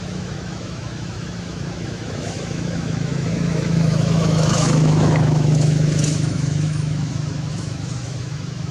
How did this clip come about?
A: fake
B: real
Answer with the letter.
A